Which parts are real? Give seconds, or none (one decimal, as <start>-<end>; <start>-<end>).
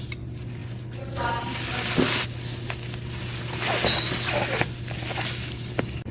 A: 0.0-6.1